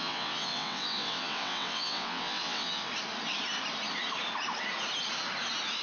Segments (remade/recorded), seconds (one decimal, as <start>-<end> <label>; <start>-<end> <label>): 0.0-2.9 remade; 2.9-5.8 recorded